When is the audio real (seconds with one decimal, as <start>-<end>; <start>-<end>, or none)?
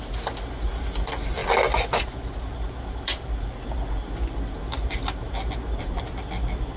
0.0-6.8